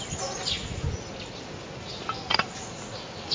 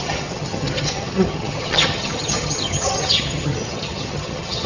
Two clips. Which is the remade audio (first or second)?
second